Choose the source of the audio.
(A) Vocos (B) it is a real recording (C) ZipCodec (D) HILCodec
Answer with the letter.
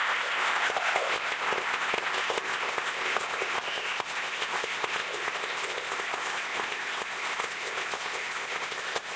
C